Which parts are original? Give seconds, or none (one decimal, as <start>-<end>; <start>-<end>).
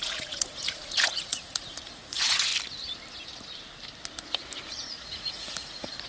2.5-4.7